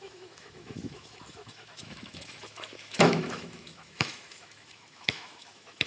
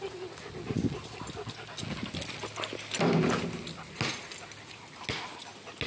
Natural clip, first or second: second